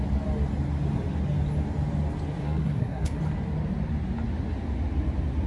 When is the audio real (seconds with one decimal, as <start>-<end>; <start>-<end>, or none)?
0.0-2.4; 3.2-5.5